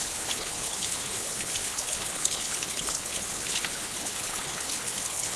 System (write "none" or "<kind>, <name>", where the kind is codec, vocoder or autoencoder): codec, HILCodec